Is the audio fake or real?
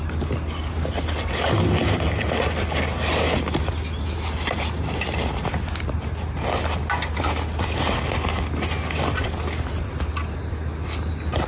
real